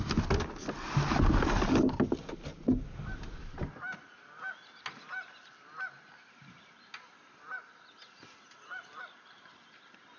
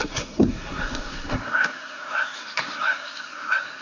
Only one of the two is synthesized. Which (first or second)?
second